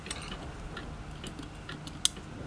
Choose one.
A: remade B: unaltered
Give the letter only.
B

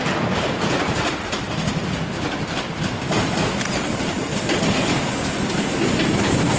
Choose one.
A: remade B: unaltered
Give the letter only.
B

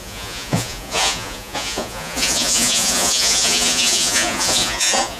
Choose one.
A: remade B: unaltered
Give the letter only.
A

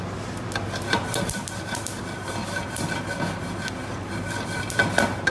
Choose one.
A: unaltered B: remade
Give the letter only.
A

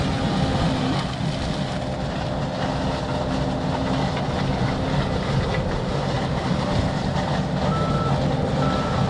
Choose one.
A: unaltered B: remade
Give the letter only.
A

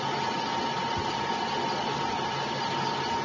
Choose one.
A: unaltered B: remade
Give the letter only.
A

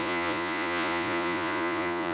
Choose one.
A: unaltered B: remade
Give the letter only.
B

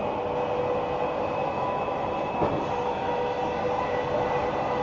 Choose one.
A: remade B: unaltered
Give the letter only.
B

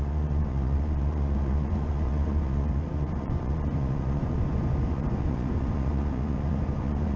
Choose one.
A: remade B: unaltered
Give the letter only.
A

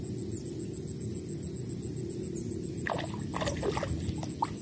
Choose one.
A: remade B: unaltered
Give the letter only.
B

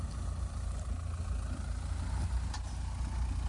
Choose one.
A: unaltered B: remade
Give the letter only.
A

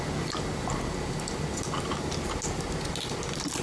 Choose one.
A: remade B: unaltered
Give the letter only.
B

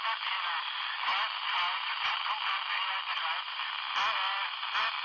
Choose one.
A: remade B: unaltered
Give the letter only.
B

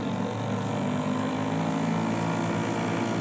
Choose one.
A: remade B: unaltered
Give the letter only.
B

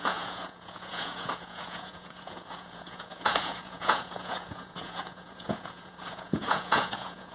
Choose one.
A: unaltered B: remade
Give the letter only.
B